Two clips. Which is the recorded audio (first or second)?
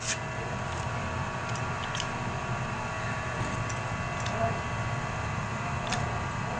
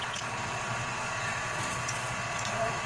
first